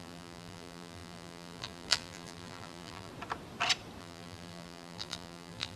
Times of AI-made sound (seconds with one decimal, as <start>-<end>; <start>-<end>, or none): 0.0-3.1; 4.0-5.8